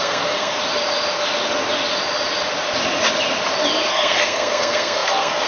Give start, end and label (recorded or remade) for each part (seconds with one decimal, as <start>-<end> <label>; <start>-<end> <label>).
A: 0.0-0.6 remade; 0.6-3.9 recorded; 3.9-5.5 remade